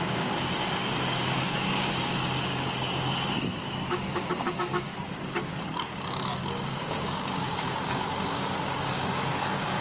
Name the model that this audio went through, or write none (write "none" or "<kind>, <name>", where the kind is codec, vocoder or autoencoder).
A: codec, DAC